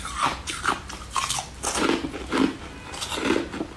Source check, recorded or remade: recorded